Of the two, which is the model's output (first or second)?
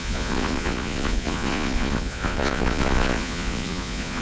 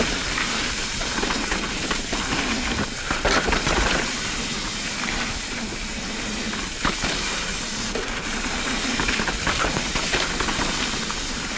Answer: first